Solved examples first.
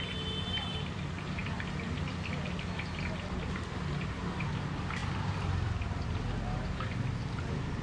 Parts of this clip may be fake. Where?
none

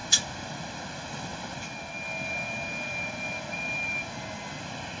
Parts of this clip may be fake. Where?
none

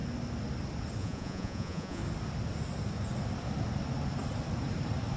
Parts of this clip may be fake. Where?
1.0-2.0 (vocoder, Vocos)

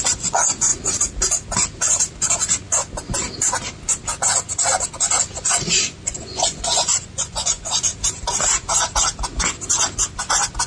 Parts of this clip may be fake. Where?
0.0-0.7 (vocoder, Vocos); 5.2-7.9

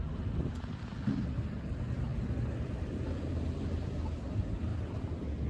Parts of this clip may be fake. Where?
none

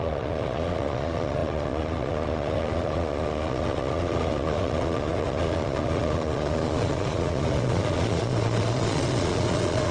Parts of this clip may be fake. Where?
0.0-9.9 (vocoder, Vocos)